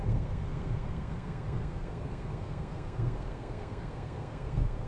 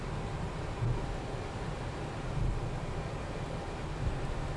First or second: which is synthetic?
first